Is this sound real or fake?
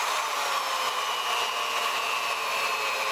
real